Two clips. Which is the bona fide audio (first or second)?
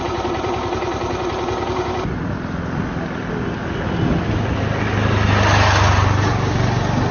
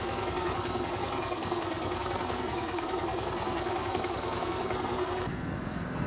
first